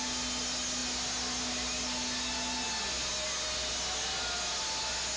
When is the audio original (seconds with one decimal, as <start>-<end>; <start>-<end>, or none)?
0.0-5.2

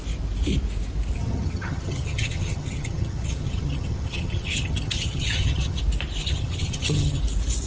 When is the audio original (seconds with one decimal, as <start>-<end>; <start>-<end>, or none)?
0.0-1.2; 5.8-6.2; 7.2-7.7